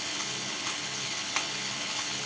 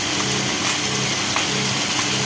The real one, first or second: second